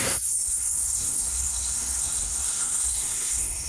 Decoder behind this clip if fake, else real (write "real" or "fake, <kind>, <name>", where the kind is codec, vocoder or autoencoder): fake, codec, SNAC